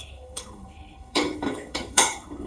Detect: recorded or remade remade